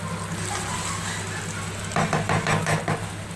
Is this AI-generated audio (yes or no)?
no